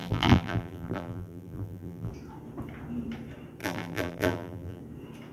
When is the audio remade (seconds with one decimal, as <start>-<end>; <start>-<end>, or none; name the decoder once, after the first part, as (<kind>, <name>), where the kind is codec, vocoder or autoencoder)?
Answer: 0.0-2.1 (vocoder, BigVGAN v2); 3.6-4.8